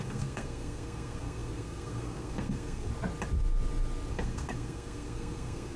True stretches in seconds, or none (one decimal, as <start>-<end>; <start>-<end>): 2.9-4.1